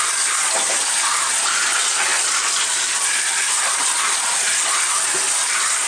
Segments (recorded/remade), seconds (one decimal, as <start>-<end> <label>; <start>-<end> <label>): 0.0-5.9 recorded